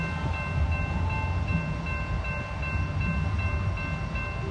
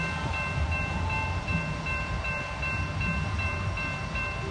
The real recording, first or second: first